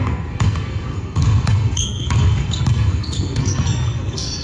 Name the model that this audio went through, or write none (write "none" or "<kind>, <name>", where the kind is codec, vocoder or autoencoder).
codec, SNAC